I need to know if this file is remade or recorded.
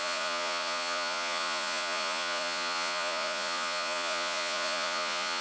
remade